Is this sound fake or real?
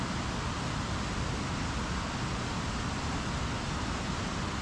real